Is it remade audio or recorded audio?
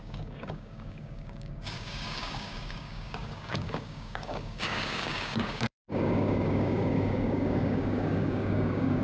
remade